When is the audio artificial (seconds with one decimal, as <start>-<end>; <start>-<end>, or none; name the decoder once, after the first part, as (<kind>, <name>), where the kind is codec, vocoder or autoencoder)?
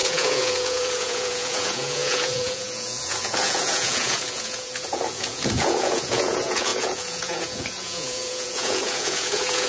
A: 0.0-9.7 (vocoder, Vocos)